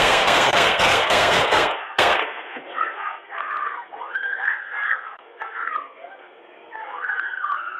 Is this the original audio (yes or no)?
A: no